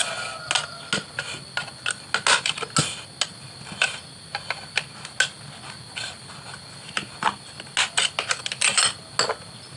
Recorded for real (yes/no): yes